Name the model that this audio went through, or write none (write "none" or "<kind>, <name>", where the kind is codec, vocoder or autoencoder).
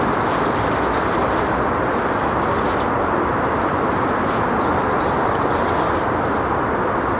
none